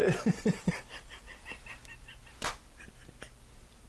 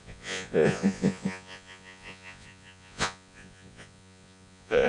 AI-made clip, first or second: second